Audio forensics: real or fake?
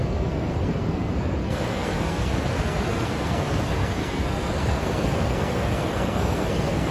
fake